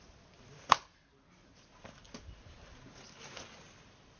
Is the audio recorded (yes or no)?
yes